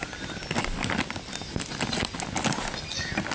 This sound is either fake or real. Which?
real